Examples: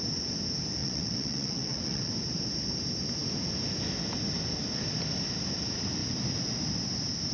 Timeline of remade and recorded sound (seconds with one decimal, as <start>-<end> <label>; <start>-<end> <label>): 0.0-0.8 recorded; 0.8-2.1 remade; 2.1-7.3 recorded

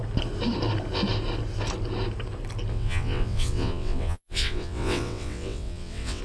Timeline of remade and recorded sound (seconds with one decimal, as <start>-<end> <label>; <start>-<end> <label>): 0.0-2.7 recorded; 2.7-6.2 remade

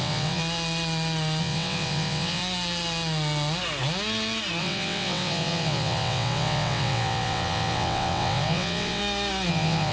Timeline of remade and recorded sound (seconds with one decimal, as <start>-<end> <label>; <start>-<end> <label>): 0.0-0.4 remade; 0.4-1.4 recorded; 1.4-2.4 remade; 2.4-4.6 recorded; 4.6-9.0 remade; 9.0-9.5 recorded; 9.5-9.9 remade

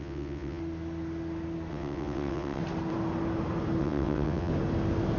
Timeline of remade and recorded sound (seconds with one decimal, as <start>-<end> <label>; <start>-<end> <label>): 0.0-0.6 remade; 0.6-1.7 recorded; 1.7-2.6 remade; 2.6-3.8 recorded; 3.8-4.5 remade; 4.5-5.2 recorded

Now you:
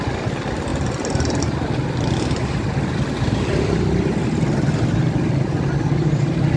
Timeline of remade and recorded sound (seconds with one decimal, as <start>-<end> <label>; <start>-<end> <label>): 0.0-6.6 recorded